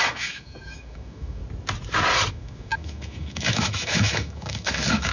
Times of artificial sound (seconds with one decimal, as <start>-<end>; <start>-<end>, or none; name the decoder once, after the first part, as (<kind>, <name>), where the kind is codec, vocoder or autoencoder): 0.0-1.4 (autoencoder, DAC-VAE); 2.3-5.1